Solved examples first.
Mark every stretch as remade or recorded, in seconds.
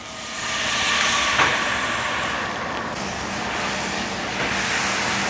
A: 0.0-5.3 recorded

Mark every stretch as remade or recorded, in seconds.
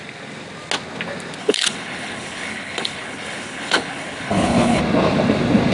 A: 0.0-1.4 recorded; 1.4-4.8 remade; 4.8-5.7 recorded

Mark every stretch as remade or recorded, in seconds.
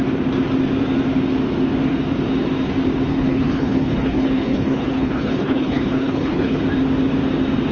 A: 0.0-3.1 recorded; 3.1-6.6 remade; 6.6-7.7 recorded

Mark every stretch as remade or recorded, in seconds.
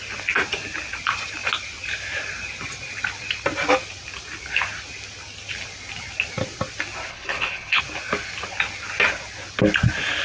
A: 0.0-7.1 recorded; 7.1-7.8 remade; 7.8-10.2 recorded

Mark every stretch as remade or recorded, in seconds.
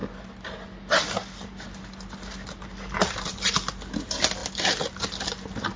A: 0.0-5.8 recorded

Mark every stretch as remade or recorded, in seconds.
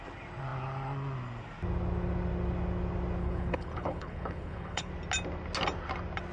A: 0.0-3.2 recorded; 3.2-4.9 remade; 4.9-6.3 recorded